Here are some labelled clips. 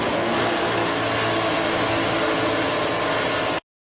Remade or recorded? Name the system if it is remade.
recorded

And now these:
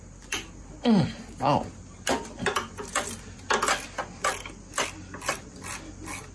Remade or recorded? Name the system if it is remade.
recorded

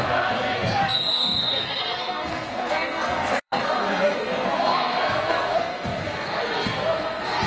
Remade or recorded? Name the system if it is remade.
remade, codec, SNAC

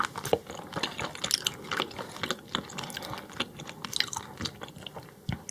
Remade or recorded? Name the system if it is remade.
recorded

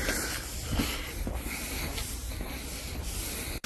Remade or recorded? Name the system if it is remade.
recorded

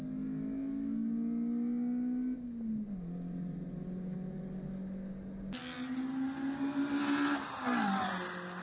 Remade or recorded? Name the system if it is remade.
recorded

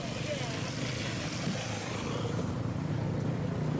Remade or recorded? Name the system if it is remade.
recorded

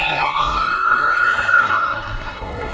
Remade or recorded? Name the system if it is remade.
remade, codec, SNAC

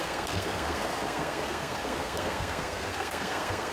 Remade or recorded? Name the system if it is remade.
remade, codec, SNAC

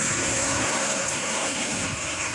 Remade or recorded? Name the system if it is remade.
remade, codec, SNAC